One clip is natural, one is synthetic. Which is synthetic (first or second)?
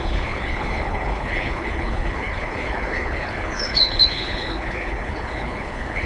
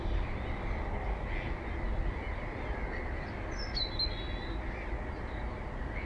first